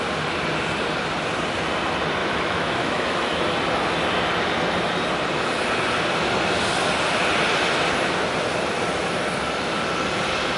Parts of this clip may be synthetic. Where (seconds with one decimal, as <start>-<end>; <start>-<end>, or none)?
2.2-3.4